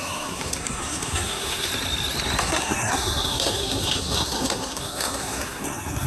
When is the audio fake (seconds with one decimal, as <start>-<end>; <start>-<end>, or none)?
0.0-1.7; 2.4-6.1